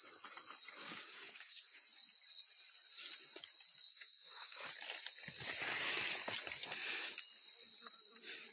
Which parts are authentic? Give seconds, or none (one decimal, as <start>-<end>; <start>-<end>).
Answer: 0.0-0.8; 1.8-3.9; 4.6-8.5